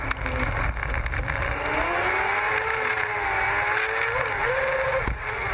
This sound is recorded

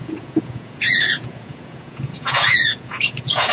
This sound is remade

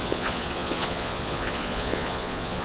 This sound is remade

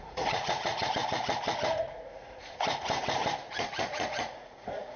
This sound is remade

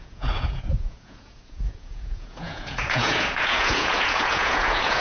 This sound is remade